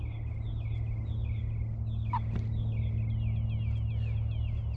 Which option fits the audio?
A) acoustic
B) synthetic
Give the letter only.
A